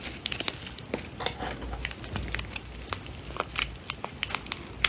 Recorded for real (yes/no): yes